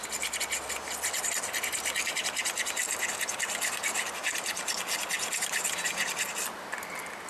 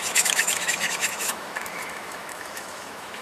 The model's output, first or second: second